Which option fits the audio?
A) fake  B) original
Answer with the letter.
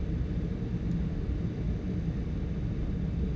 B